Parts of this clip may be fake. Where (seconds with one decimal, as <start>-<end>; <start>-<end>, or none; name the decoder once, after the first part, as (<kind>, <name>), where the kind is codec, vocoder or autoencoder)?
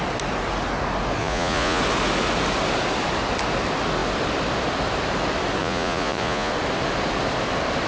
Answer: 1.2-1.8 (vocoder, Vocos); 5.6-6.5